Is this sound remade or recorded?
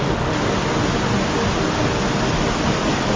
recorded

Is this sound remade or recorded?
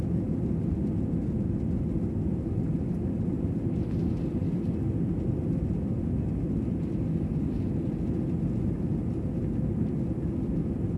recorded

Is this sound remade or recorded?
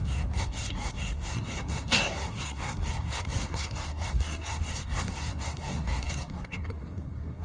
remade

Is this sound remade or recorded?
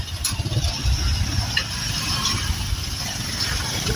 remade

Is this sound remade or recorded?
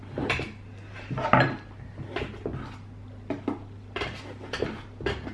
remade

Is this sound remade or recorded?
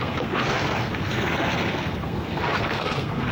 remade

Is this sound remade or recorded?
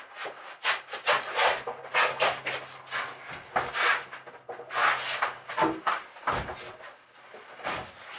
recorded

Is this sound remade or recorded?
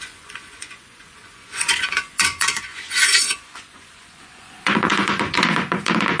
remade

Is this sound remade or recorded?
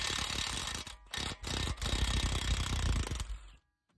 recorded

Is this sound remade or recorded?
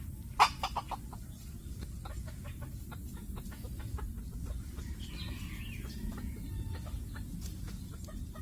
recorded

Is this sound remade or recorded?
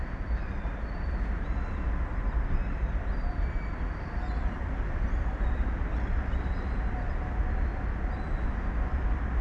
recorded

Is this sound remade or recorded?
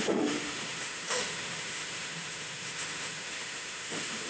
remade